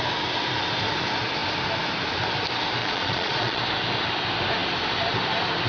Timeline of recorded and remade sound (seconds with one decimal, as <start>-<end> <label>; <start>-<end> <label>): 0.0-2.8 recorded; 2.8-3.6 remade; 3.6-5.7 recorded